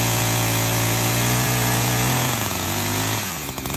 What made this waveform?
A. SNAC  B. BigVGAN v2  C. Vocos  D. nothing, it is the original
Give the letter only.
C